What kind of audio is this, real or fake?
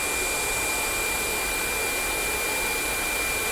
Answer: real